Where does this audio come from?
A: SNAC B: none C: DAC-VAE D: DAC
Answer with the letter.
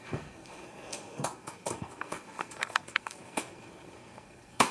A